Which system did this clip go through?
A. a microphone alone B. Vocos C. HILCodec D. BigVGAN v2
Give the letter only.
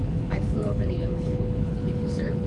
C